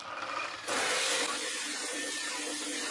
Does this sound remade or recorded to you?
recorded